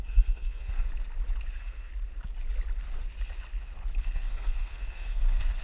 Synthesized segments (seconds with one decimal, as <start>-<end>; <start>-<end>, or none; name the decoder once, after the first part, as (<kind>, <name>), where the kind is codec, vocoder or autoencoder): 0.0-0.9 (codec, SNAC); 1.5-1.9; 4.0-5.6